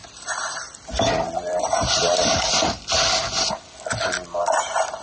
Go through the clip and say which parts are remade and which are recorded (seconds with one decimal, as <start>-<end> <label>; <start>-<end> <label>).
0.0-3.0 remade; 3.0-5.0 recorded